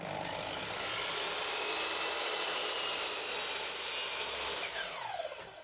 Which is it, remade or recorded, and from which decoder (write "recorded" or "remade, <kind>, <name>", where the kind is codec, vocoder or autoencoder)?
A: recorded